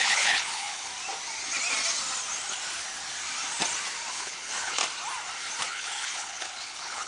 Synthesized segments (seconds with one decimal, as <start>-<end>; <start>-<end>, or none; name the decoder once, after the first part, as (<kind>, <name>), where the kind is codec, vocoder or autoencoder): 0.0-0.9 (codec, HILCodec); 4.1-4.8; 5.7-7.1